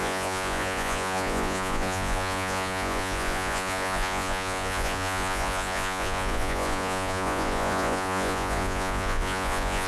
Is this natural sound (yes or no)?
no